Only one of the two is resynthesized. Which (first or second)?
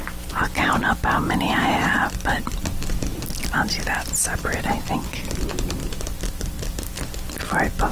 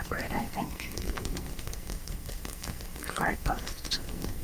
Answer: second